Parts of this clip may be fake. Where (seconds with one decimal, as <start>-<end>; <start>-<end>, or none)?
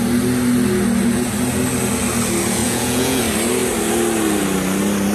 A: 2.6-3.2